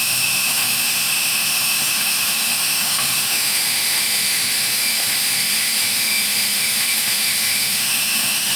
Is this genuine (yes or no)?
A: no